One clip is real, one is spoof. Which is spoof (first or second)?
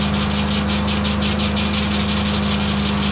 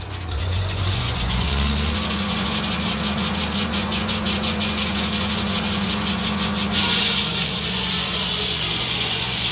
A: second